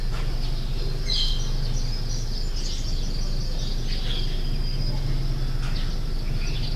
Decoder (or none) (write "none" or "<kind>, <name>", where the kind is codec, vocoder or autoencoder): none